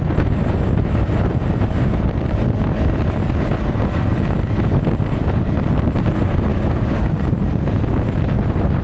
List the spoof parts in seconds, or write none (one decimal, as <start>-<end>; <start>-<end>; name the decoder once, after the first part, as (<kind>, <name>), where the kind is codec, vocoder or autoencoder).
6.5-7.2 (codec, DAC)